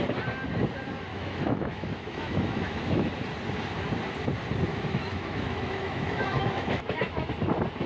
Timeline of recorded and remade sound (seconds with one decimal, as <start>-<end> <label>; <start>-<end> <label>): 0.0-1.1 recorded; 1.1-3.1 remade; 3.1-4.7 recorded; 4.7-7.3 remade; 7.3-7.9 recorded